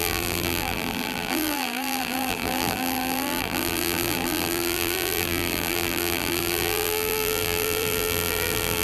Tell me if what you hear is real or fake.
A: fake